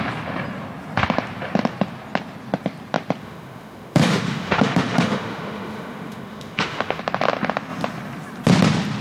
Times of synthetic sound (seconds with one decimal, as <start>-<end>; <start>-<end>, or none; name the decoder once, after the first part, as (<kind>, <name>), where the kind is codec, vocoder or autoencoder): 3.2-7.0 (autoencoder, DAC-VAE)